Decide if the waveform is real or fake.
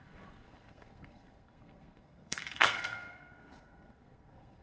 fake